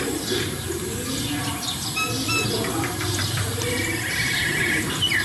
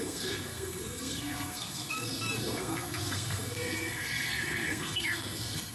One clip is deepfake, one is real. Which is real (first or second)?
first